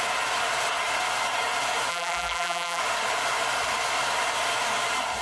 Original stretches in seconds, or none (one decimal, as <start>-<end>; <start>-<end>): 0.0-1.9; 2.8-5.2